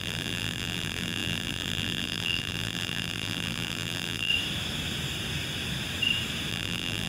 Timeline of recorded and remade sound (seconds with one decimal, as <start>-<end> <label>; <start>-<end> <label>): 0.0-4.3 remade; 4.3-6.5 recorded; 6.5-7.1 remade